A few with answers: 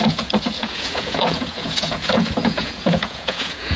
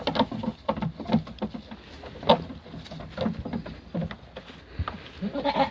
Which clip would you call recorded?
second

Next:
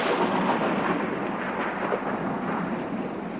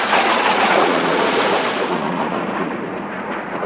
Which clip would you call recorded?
first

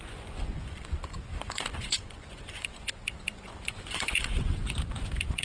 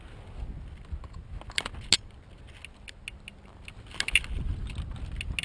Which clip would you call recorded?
second